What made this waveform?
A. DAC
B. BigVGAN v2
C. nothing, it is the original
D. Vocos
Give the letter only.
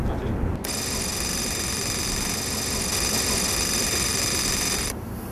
C